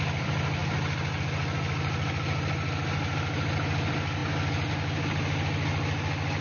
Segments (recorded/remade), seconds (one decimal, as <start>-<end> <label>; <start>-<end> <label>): 0.0-6.4 recorded